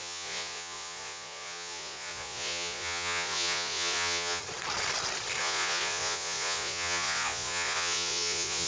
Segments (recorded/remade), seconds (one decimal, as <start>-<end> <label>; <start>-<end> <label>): 0.0-4.4 remade; 4.4-5.4 recorded; 5.4-8.7 remade